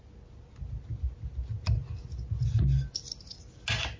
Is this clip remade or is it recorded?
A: recorded